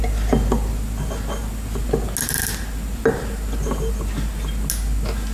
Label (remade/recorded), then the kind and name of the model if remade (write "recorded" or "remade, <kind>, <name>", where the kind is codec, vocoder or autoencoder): recorded